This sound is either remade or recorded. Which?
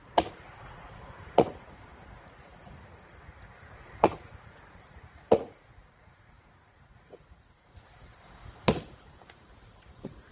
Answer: remade